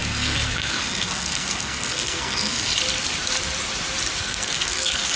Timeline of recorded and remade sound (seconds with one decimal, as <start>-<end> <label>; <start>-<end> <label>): 0.0-2.7 remade; 2.7-4.2 recorded; 4.2-5.2 remade